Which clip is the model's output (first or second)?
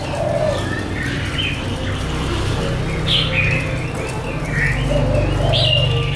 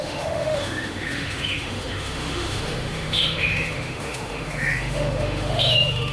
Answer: second